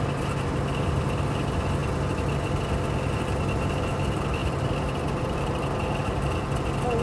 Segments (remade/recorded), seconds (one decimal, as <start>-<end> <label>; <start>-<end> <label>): 0.0-4.4 recorded; 4.4-5.6 remade; 5.6-7.0 recorded